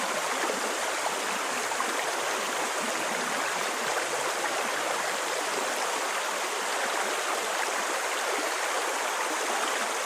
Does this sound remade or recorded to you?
recorded